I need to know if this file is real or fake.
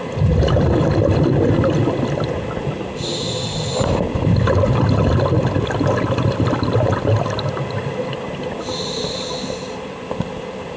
real